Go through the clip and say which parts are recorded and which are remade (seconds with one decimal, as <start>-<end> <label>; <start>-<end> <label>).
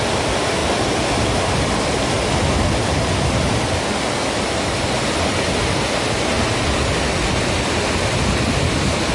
0.0-9.1 recorded